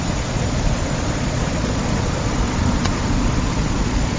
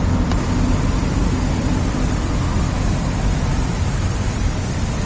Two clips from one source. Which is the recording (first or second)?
second